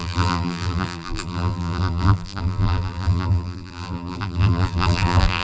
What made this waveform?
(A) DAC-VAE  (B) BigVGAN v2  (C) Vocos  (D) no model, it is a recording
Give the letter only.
B